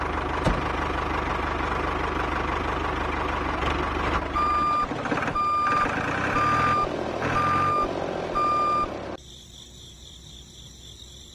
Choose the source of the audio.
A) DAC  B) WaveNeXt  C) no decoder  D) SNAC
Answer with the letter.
C